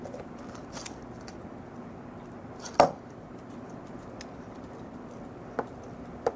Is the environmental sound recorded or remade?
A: recorded